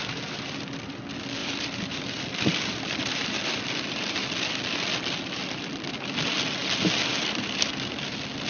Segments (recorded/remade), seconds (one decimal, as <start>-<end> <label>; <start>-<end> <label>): 0.0-1.4 recorded; 1.4-4.5 remade; 4.5-6.6 recorded; 6.6-7.7 remade; 7.7-8.5 recorded